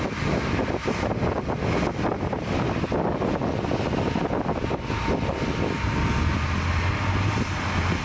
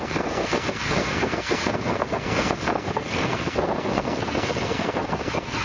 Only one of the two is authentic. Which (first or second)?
first